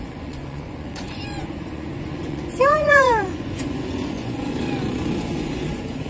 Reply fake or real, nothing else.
fake